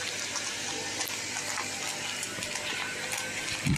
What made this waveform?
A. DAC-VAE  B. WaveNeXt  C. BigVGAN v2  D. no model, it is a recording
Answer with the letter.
D